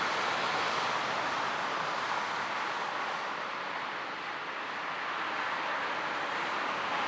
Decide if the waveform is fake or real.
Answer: real